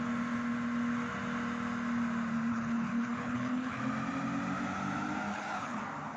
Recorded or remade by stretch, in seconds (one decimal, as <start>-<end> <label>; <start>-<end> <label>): 0.0-2.5 recorded; 2.5-3.8 remade; 3.8-5.3 recorded; 5.3-5.8 remade; 5.8-6.2 recorded